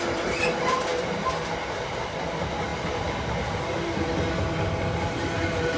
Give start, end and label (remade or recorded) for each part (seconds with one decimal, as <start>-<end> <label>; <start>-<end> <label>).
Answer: 0.0-5.8 recorded